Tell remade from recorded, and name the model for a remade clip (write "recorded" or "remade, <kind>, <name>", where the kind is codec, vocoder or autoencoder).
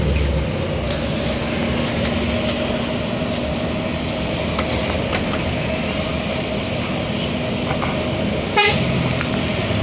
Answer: recorded